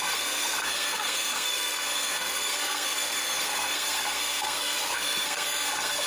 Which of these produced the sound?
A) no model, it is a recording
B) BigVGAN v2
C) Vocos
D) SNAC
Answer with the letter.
D